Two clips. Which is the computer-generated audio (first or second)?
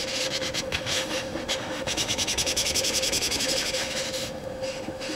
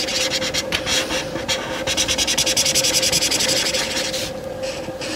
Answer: first